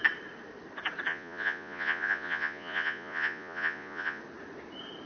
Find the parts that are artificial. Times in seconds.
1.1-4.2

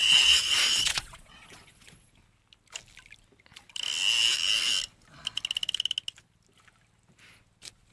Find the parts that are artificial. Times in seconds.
0.0-2.1